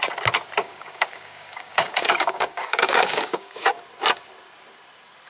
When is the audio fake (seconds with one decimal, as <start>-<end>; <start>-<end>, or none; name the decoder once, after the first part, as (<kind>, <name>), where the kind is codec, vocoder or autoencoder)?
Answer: 0.6-3.8 (codec, DAC)